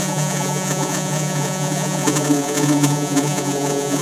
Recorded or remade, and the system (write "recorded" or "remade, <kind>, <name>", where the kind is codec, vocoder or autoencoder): remade, vocoder, Vocos